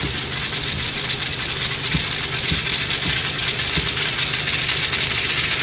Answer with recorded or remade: recorded